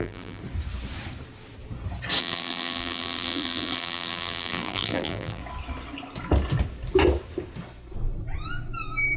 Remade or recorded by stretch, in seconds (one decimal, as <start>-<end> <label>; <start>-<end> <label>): 0.0-0.4 remade; 0.4-2.2 recorded; 2.2-5.4 remade; 5.4-9.2 recorded